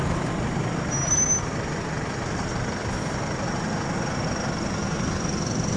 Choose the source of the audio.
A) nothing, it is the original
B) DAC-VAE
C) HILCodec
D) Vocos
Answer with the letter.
A